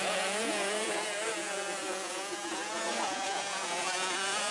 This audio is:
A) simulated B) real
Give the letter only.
A